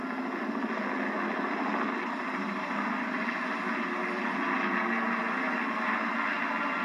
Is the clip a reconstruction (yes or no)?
no